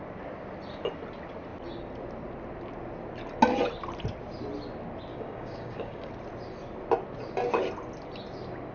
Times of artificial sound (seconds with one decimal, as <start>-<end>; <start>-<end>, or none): 5.1-6.1